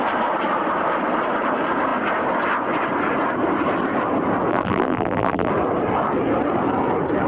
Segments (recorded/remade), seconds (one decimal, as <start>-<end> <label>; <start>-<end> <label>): 0.0-4.5 recorded; 4.5-5.5 remade; 5.5-7.3 recorded